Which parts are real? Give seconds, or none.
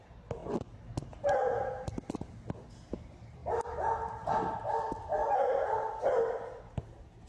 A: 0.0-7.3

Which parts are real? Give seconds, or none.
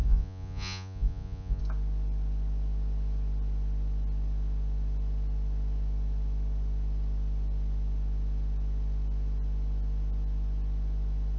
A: 1.6-11.4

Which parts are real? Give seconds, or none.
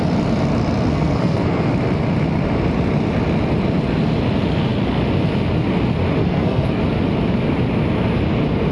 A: 0.0-0.9; 1.7-6.2; 6.8-8.7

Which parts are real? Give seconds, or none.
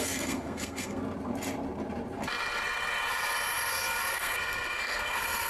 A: 1.0-4.1